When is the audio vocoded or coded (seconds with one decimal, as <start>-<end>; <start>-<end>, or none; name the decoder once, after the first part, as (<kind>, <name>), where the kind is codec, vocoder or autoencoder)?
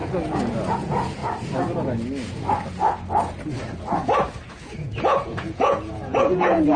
0.7-1.2 (vocoder, Vocos); 4.5-6.8